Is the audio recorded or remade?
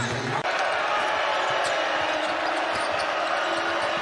recorded